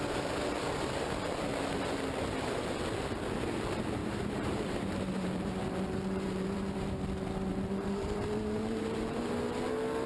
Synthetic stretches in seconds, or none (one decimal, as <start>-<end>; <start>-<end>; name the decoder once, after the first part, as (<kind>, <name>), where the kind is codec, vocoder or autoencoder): 4.0-6.9 (vocoder, BigVGAN v2); 7.5-9.2